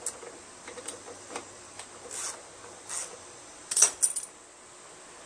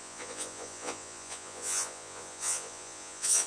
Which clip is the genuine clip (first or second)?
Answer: first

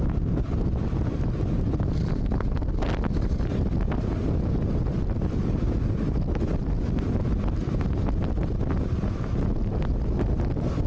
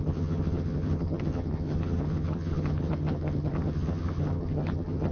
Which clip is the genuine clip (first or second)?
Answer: first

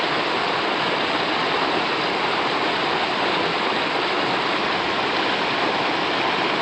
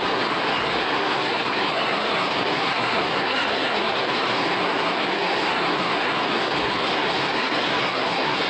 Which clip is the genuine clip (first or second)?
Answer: first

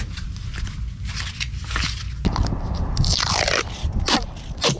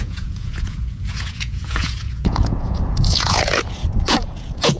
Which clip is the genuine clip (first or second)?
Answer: first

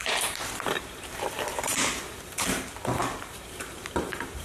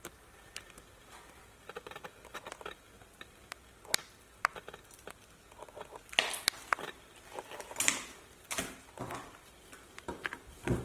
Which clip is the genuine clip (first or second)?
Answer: second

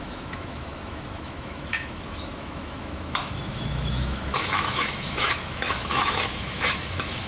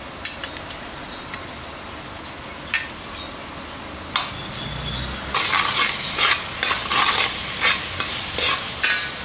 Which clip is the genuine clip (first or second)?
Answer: second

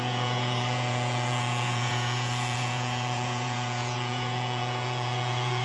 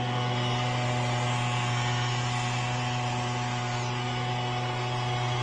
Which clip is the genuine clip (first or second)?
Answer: second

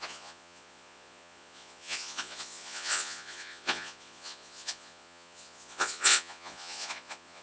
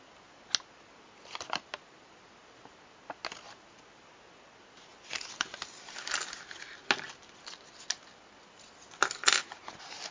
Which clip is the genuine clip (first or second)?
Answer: second